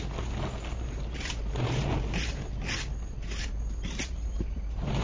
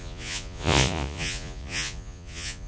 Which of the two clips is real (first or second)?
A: first